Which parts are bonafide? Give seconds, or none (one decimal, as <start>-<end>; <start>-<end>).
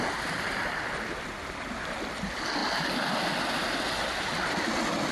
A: 0.0-5.1